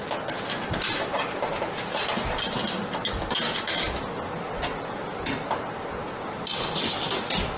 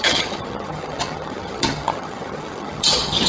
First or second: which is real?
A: first